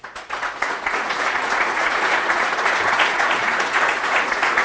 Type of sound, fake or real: fake